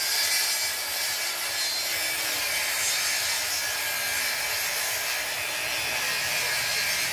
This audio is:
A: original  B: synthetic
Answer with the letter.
A